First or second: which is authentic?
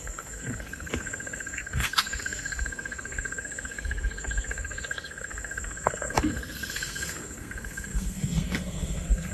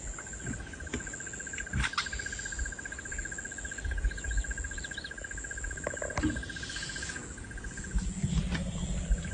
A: second